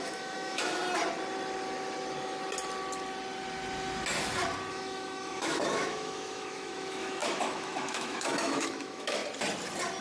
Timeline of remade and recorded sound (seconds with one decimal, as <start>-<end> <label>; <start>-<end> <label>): 0.0-0.8 remade; 0.8-4.7 recorded; 4.7-9.2 remade; 9.2-10.0 recorded